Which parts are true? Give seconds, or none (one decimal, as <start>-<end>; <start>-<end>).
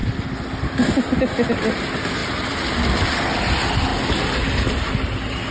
0.0-2.2; 3.5-5.5